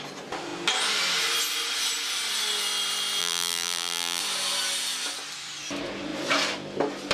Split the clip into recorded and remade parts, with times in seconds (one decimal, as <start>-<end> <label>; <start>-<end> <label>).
0.0-3.2 recorded; 3.2-4.2 remade; 4.2-7.1 recorded